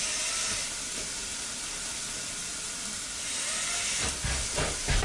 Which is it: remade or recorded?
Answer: recorded